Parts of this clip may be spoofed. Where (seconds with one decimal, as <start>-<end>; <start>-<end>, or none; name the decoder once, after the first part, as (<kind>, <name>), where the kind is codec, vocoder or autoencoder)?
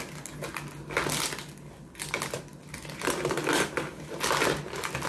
none